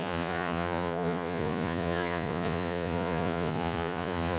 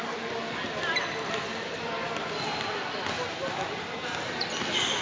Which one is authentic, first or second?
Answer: second